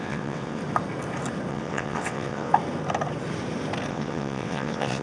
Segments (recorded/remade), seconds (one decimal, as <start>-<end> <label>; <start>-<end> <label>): 0.0-0.6 remade; 0.6-1.5 recorded; 1.5-2.5 remade; 2.5-3.9 recorded; 3.9-5.0 remade